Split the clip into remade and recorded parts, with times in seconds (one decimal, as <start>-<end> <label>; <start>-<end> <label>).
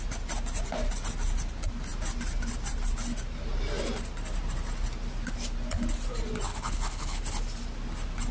0.0-6.5 recorded; 6.5-7.2 remade; 7.2-8.3 recorded